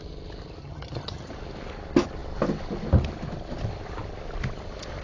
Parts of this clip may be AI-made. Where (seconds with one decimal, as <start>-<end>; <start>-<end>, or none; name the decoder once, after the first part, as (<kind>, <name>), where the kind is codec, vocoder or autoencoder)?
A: 0.6-1.3 (vocoder, HiFi-GAN)